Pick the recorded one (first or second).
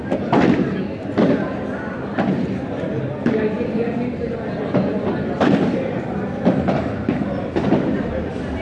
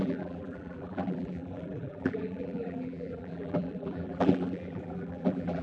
first